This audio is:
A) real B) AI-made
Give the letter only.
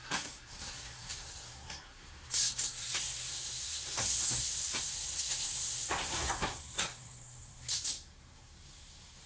B